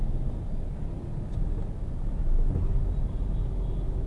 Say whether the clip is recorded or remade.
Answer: recorded